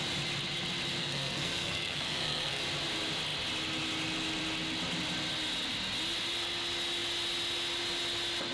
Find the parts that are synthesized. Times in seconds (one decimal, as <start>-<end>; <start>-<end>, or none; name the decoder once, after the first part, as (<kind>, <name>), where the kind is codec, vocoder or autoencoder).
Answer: 1.0-2.6 (codec, SNAC)